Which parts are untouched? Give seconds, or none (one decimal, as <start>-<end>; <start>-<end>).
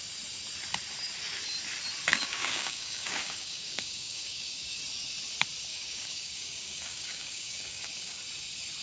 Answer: 0.0-2.1; 4.8-5.7; 8.2-8.8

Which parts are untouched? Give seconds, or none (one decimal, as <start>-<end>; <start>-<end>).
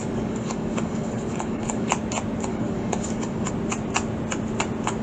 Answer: 1.9-2.5; 3.5-5.0